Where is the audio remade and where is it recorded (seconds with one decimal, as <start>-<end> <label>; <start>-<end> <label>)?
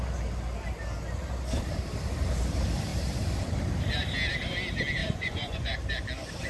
0.0-5.0 recorded; 5.0-5.7 remade; 5.7-6.5 recorded